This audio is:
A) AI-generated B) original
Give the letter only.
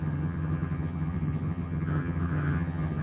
A